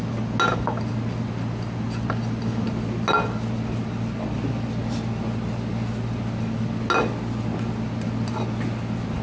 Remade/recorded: recorded